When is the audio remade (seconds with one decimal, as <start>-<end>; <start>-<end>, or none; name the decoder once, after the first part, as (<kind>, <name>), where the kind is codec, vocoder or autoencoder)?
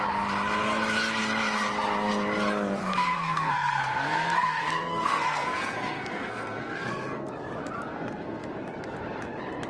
2.8-7.3 (codec, SNAC); 7.9-8.5